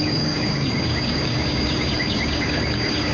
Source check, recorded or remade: remade